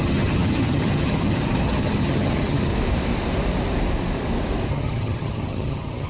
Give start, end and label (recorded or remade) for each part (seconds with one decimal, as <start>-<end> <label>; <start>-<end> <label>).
0.0-2.7 remade; 2.7-4.7 recorded; 4.7-6.1 remade